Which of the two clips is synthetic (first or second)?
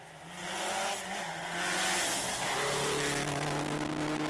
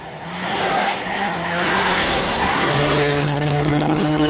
second